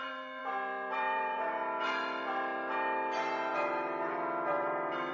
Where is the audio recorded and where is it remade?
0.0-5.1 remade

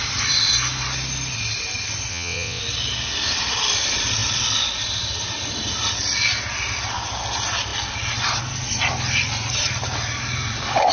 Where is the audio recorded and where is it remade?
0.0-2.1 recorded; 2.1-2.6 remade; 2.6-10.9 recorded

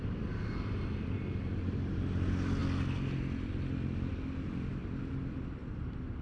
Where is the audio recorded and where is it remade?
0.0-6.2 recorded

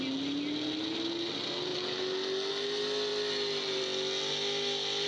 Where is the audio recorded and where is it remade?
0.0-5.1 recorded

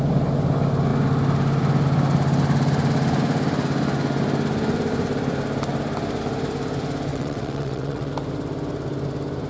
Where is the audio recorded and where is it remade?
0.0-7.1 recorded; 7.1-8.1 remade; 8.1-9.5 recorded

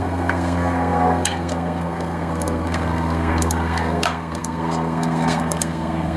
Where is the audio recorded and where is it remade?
0.0-6.2 remade